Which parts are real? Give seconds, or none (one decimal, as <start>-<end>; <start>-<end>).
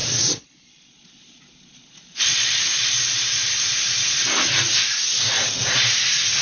2.6-6.4